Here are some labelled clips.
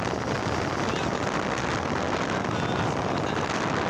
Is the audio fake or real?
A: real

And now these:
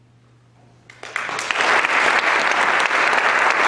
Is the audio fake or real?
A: real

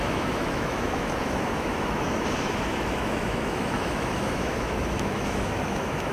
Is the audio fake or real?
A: fake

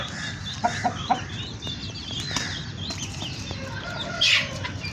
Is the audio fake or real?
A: real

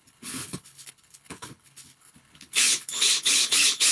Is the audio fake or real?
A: fake